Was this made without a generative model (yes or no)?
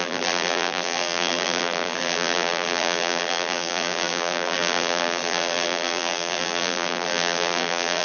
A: no